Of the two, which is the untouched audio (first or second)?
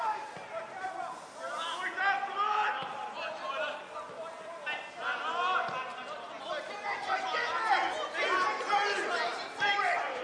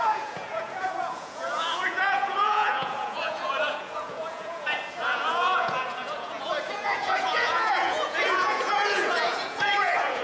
first